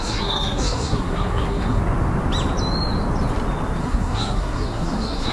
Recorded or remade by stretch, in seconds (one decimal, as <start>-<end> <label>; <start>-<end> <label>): 0.0-1.8 remade; 1.8-3.8 recorded; 3.8-5.3 remade